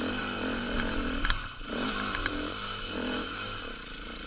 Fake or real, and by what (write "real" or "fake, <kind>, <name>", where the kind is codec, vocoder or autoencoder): fake, vocoder, BigVGAN v2